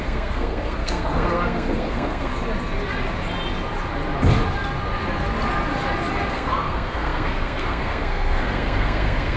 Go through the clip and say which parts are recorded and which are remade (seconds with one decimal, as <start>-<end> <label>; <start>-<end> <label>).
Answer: 0.0-2.3 remade; 2.3-6.3 recorded; 6.3-9.4 remade